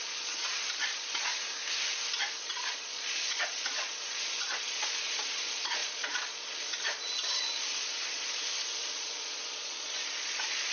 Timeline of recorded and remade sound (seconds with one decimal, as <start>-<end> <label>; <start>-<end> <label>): 0.0-1.3 remade; 1.3-2.4 recorded; 2.4-10.7 remade

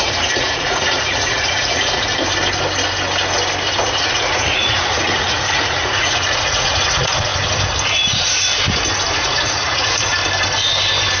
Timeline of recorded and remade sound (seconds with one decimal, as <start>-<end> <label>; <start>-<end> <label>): 0.0-2.1 remade; 2.1-3.7 recorded; 3.7-7.3 remade; 7.3-9.1 recorded; 9.1-10.2 remade; 10.2-11.2 recorded

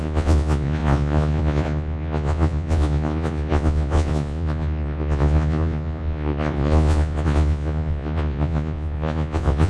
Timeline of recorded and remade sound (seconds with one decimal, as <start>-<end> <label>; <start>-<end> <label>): 0.0-9.7 remade